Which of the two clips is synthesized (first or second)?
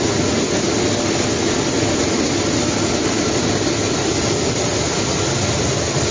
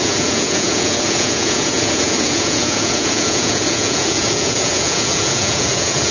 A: second